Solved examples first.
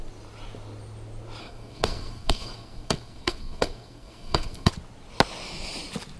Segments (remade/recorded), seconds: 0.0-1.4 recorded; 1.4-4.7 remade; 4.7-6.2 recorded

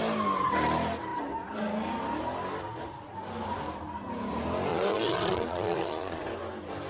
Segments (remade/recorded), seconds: 0.0-4.7 recorded; 4.7-6.2 remade; 6.2-6.9 recorded

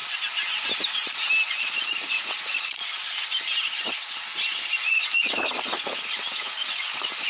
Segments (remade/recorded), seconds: 0.0-1.5 recorded; 1.5-2.8 remade; 2.8-4.8 recorded; 4.8-7.3 remade

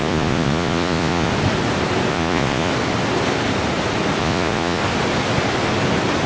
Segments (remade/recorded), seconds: 0.0-1.3 remade; 1.3-2.1 recorded; 2.1-2.7 remade; 2.7-4.2 recorded; 4.2-4.8 remade; 4.8-6.3 recorded

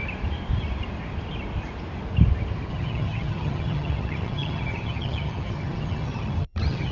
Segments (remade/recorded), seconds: 0.0-2.7 recorded; 2.7-6.9 remade